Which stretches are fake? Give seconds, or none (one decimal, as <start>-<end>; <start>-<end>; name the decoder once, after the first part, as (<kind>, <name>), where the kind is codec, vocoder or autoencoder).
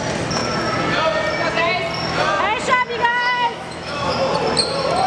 3.1-4.1 (autoencoder, DAC-VAE)